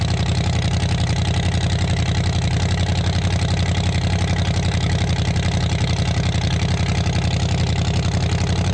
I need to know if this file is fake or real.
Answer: real